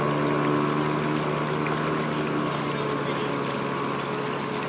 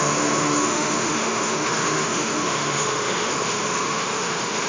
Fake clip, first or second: second